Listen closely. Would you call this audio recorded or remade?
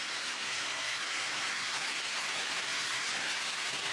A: remade